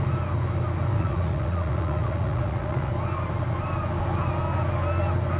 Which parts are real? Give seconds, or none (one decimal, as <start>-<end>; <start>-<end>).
0.0-0.9; 2.9-5.4